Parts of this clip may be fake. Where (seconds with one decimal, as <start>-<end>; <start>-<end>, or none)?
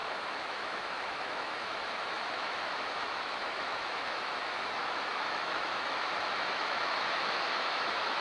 0.0-8.2